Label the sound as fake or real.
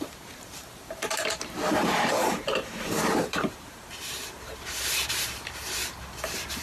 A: fake